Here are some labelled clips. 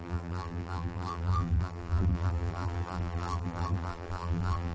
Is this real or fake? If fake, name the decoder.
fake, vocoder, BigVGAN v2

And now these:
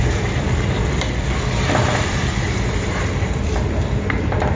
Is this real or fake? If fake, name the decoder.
fake, vocoder, BigVGAN v2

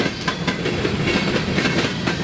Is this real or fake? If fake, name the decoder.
real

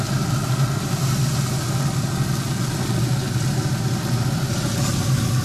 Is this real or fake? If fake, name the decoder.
real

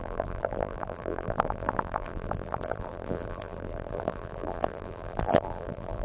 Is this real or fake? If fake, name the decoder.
fake, vocoder, BigVGAN v2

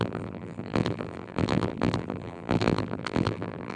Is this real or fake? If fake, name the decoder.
fake, vocoder, BigVGAN v2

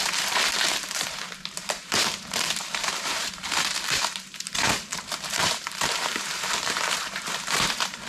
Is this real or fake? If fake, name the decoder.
fake, vocoder, BigVGAN v2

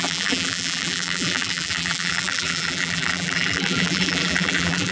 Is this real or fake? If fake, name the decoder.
fake, vocoder, BigVGAN v2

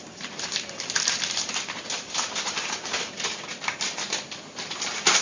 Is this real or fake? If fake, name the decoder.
fake, vocoder, BigVGAN v2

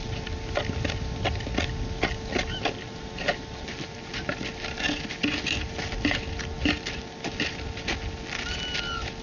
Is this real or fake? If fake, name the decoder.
real